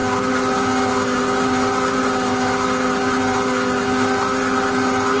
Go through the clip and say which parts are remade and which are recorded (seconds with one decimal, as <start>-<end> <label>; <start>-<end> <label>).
0.0-5.2 recorded